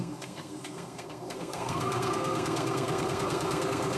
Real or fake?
fake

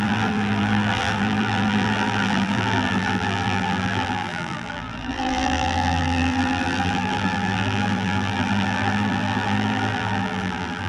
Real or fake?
fake